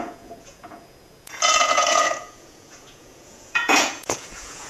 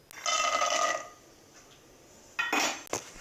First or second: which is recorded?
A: second